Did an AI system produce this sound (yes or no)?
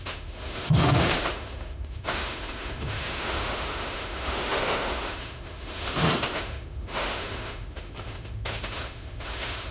yes